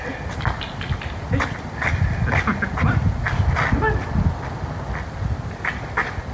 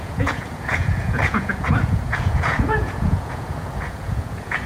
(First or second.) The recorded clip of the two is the first